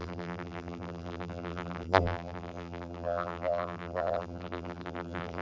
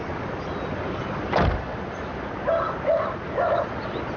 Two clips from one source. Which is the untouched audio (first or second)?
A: second